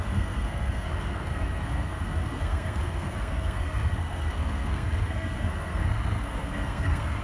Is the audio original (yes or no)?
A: no